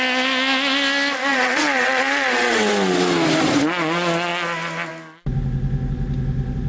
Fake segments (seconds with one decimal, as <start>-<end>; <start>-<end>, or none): 1.3-2.7